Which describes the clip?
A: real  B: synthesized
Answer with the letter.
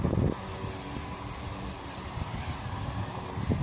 A